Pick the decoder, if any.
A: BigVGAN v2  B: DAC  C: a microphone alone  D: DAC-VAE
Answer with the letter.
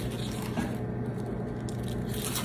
C